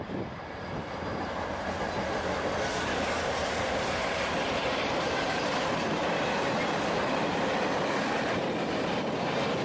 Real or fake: real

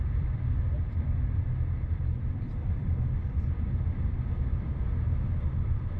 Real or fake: fake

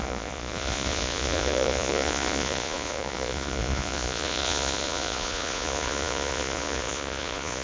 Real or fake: fake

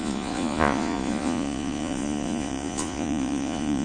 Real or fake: fake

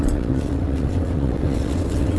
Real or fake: fake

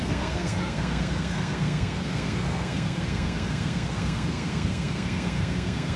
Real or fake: fake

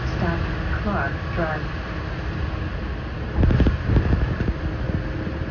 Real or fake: real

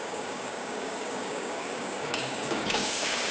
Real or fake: fake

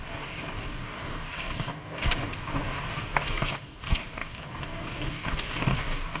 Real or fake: fake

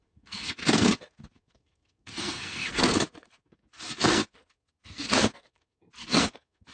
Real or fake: fake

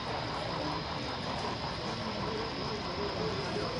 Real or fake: fake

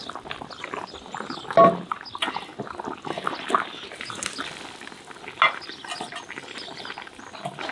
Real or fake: real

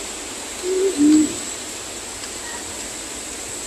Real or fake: real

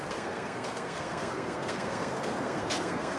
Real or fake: fake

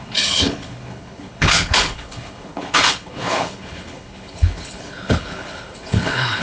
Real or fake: fake